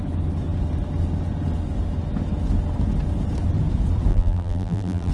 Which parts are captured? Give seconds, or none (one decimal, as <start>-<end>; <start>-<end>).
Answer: 0.0-4.1